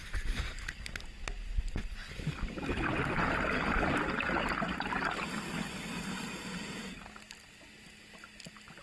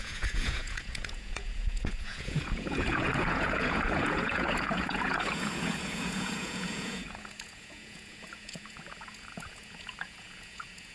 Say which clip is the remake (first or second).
second